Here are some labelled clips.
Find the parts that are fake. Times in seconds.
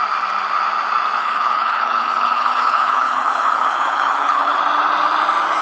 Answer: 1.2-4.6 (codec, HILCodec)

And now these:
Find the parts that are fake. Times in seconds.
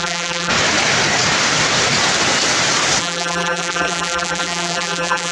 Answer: 0.0-0.5 (vocoder, BigVGAN v2); 3.0-5.3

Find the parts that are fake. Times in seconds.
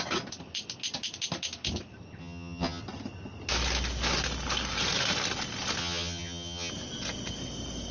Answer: 2.2-2.8 (vocoder, HiFi-GAN); 5.8-6.7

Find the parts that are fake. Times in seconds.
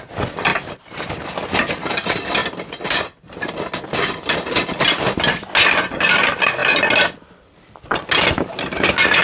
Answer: 0.5-1.1 (vocoder, BigVGAN v2)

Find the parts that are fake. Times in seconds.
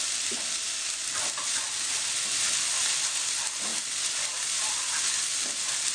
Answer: 3.7-5.1 (vocoder, BigVGAN v2)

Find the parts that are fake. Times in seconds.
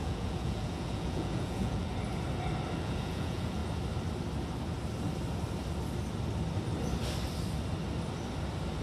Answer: 0.0-1.9 (vocoder, Vocos); 2.8-3.6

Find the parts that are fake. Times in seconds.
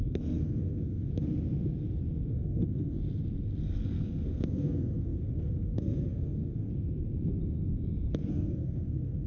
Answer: 0.0-1.1 (codec, SNAC); 2.3-3.0; 3.6-6.7; 8.3-9.3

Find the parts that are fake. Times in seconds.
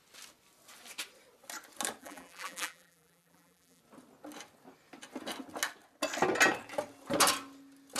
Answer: 2.0-3.8 (vocoder, BigVGAN v2)